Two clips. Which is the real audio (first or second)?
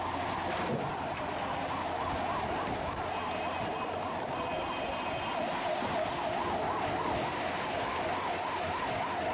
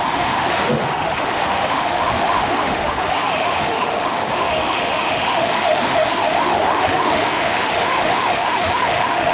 first